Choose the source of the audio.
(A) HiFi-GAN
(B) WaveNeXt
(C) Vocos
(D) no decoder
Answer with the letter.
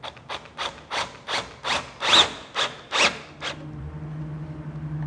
D